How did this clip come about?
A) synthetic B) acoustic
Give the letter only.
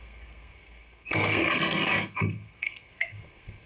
A